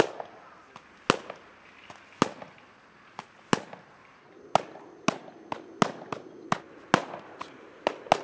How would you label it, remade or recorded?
recorded